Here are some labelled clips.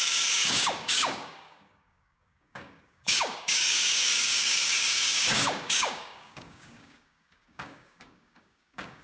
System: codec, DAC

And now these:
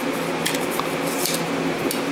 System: none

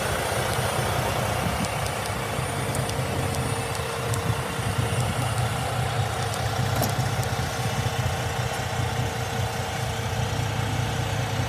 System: none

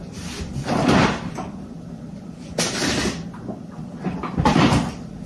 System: vocoder, BigVGAN v2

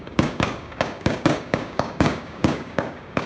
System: codec, DAC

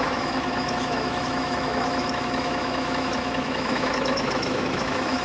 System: autoencoder, DAC-VAE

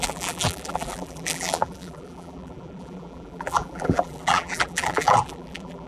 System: vocoder, BigVGAN v2